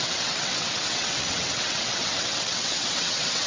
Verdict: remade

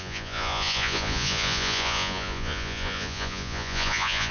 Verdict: remade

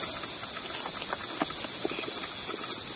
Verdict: recorded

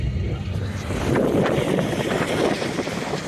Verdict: recorded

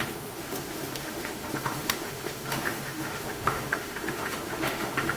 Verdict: remade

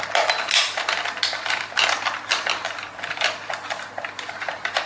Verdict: recorded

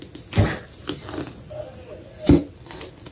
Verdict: recorded